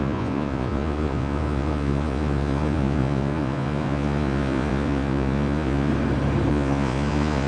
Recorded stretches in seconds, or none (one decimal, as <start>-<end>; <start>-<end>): 5.9-6.5